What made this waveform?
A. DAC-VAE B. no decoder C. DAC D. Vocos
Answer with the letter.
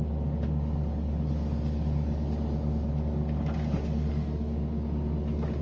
C